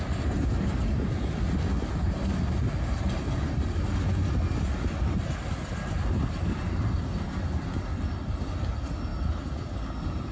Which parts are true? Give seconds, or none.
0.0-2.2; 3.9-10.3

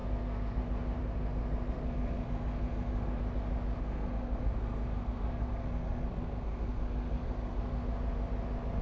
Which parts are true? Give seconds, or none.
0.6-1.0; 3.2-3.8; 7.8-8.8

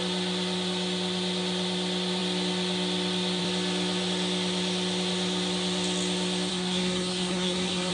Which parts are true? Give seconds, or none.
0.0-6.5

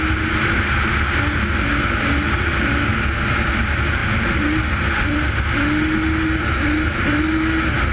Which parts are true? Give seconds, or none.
0.0-7.9